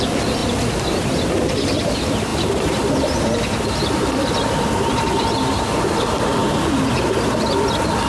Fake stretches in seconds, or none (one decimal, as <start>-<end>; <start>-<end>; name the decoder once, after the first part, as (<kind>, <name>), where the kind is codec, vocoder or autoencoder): 0.0-0.4 (vocoder, BigVGAN v2); 1.2-6.4